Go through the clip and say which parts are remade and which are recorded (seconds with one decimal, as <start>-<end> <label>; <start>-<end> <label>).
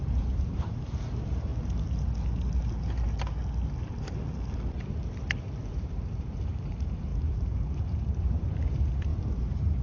0.0-1.5 remade; 1.5-5.6 recorded; 5.6-9.8 remade